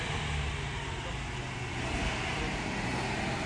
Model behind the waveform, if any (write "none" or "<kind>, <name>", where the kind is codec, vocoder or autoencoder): none